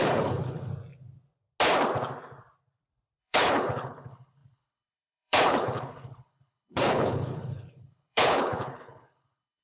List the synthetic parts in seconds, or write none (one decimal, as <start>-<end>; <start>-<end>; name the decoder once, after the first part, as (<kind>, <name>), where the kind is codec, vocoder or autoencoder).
0.0-0.7 (codec, HILCodec); 3.2-9.6